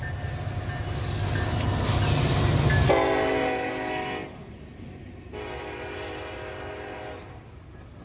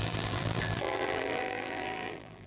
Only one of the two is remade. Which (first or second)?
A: second